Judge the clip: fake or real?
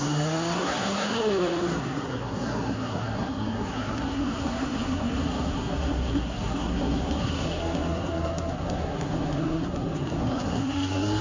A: fake